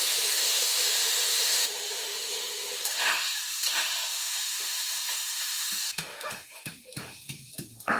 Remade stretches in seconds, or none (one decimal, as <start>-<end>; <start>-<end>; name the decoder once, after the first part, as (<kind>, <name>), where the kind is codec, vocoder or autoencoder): 0.0-8.0 (autoencoder, DAC-VAE)